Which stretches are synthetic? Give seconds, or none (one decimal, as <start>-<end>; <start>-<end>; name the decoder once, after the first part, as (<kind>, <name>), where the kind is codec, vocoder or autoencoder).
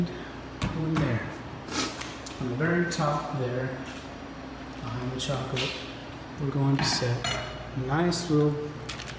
0.7-4.5 (vocoder, BigVGAN v2); 6.0-6.5